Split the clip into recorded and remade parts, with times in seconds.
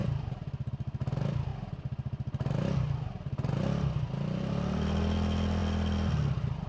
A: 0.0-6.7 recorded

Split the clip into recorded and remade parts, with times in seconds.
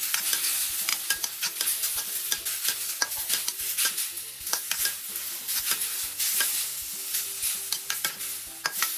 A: 0.0-9.0 recorded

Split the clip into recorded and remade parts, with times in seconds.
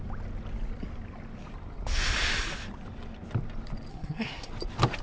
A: 0.0-3.9 recorded; 3.9-4.5 remade; 4.5-5.0 recorded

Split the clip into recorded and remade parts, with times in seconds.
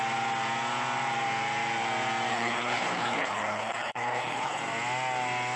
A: 0.0-2.3 recorded; 2.3-4.6 remade; 4.6-5.6 recorded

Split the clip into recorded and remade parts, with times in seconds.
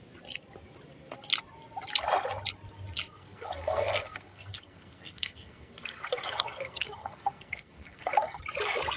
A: 0.0-3.1 recorded; 3.1-8.4 remade; 8.4-9.0 recorded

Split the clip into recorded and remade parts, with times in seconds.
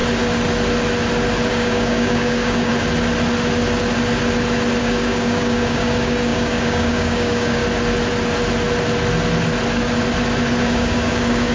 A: 0.0-1.5 recorded; 1.5-2.7 remade; 2.7-4.8 recorded; 4.8-7.6 remade; 7.6-10.6 recorded; 10.6-11.5 remade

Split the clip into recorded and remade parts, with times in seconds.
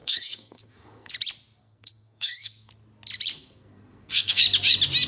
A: 0.0-1.1 remade; 1.1-1.6 recorded; 1.6-2.7 remade; 2.7-3.3 recorded; 3.3-4.4 remade; 4.4-5.1 recorded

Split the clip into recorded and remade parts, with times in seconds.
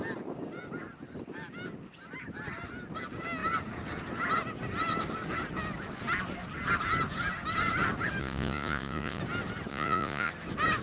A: 0.0-8.2 recorded; 8.2-9.2 remade; 9.2-9.7 recorded; 9.7-10.3 remade; 10.3-10.8 recorded